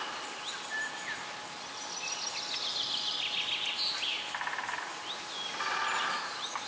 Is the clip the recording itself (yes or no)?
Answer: yes